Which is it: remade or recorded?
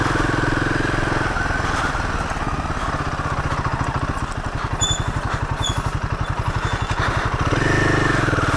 recorded